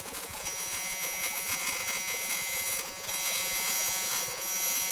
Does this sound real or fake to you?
fake